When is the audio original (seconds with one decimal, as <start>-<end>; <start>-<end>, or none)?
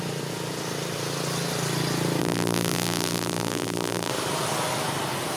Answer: 0.0-2.2; 4.1-5.4